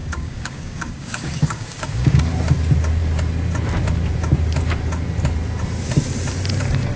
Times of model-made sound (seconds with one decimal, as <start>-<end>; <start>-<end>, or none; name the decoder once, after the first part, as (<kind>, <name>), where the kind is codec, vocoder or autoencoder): 0.0-2.2 (codec, DAC)